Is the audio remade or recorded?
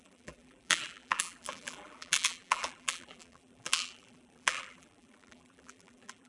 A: remade